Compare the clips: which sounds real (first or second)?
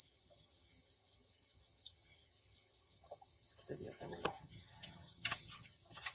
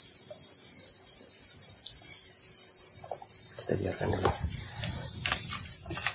second